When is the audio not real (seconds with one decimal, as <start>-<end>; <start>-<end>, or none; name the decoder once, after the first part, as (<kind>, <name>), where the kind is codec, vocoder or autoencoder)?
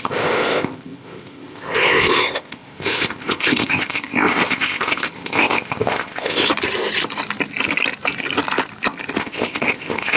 0.0-6.4 (codec, ZipCodec); 9.2-10.2